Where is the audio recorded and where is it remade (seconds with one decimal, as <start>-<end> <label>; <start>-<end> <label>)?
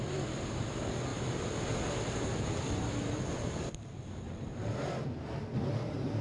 0.0-1.1 recorded; 1.1-2.9 remade; 2.9-6.2 recorded